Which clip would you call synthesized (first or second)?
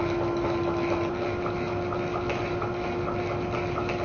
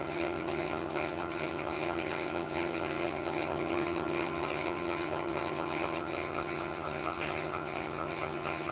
second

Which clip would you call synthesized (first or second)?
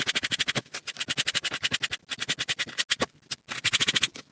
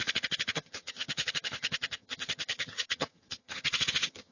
second